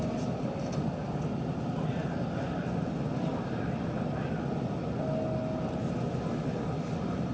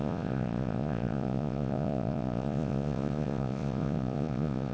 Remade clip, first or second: second